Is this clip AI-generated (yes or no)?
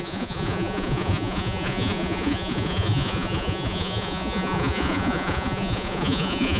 yes